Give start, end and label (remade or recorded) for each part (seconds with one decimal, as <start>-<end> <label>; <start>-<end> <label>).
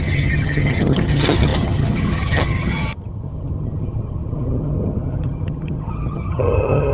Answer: 0.0-6.9 remade